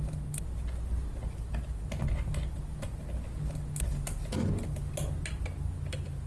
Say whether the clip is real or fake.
real